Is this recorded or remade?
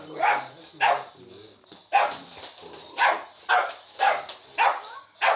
recorded